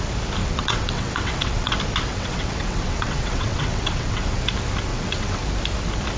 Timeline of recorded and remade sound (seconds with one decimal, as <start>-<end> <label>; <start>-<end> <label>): 0.0-0.4 recorded; 0.4-1.7 remade; 1.7-2.1 recorded; 2.1-4.4 remade; 4.4-4.9 recorded; 4.9-5.4 remade; 5.4-6.2 recorded